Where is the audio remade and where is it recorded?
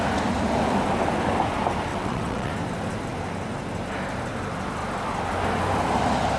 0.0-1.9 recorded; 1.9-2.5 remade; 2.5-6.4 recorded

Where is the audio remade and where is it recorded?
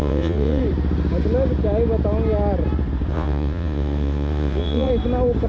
0.0-0.6 remade; 0.6-3.1 recorded; 3.1-4.9 remade; 4.9-5.5 recorded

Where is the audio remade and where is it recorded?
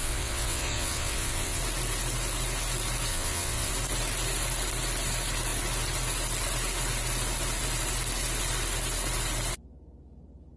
0.0-1.6 remade; 1.6-3.1 recorded; 3.1-3.7 remade; 3.7-10.6 recorded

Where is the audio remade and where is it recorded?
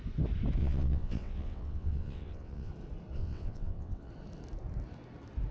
0.0-0.6 recorded; 0.6-2.7 remade; 2.7-3.2 recorded; 3.2-4.1 remade; 4.1-5.5 recorded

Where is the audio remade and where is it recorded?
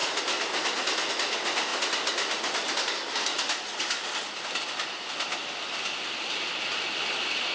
0.0-7.5 recorded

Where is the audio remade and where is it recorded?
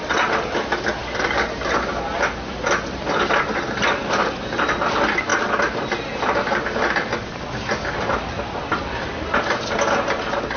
0.0-10.6 recorded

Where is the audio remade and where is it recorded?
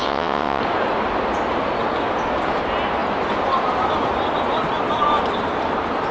0.0-0.6 remade; 0.6-6.1 recorded